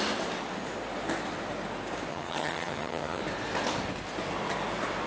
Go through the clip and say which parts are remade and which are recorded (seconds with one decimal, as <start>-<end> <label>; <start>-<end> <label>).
0.0-2.1 recorded; 2.1-3.2 remade; 3.2-5.1 recorded